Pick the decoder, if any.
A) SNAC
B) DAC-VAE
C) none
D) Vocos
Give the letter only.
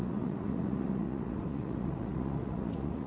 D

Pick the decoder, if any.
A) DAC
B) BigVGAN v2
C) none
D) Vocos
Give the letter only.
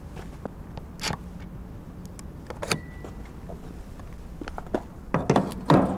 C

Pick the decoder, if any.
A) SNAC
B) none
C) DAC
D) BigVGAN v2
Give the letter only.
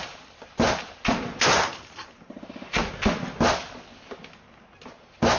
B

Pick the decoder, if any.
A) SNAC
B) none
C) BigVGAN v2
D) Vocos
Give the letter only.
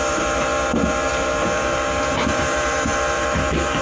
C